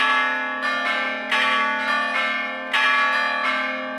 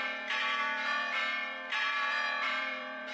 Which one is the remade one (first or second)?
second